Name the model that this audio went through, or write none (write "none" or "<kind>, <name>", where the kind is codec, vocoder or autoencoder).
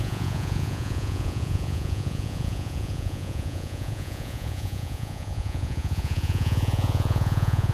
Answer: vocoder, Vocos